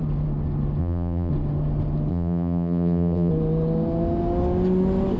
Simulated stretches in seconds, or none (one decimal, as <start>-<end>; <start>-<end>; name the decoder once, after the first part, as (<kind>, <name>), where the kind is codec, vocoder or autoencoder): 0.8-1.3 (vocoder, BigVGAN v2); 2.1-3.3